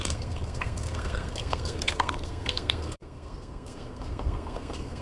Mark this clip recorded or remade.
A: remade